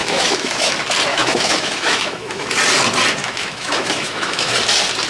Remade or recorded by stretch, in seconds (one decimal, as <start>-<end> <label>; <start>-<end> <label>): 0.0-0.7 remade; 0.7-1.1 recorded; 1.1-2.5 remade; 2.5-3.2 recorded; 3.2-4.5 remade; 4.5-5.1 recorded